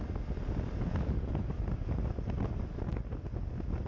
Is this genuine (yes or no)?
yes